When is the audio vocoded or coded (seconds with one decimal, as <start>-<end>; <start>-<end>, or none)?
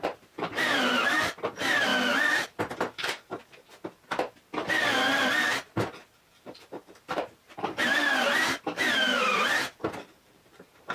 0.0-1.9; 6.2-10.9